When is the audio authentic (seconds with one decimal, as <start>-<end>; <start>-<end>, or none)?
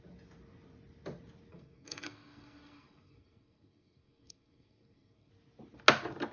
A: 0.0-1.5; 5.3-6.3